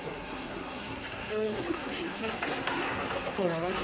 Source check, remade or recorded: remade